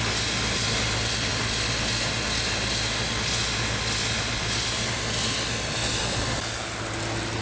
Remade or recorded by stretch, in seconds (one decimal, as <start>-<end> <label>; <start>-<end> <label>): 0.0-7.4 recorded